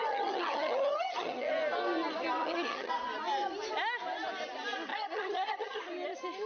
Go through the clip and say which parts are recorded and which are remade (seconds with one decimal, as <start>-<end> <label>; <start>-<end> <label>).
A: 0.0-1.5 remade; 1.5-2.4 recorded; 2.4-2.9 remade; 2.9-4.9 recorded; 4.9-5.8 remade; 5.8-6.5 recorded